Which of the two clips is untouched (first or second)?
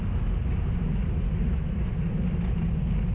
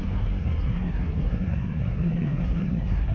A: first